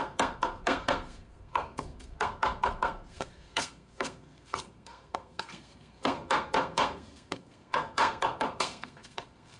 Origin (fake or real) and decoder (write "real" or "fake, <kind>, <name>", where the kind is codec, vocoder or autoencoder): fake, codec, SNAC